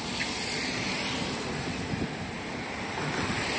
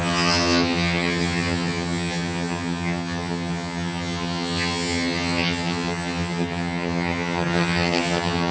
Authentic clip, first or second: first